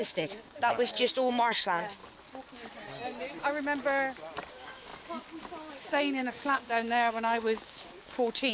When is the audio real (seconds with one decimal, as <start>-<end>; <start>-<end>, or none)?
2.0-4.5; 4.9-5.7